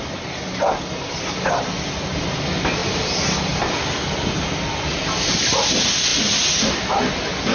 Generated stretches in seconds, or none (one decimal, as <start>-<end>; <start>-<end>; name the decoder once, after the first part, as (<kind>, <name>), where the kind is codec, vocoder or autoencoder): 2.8-4.5 (vocoder, BigVGAN v2)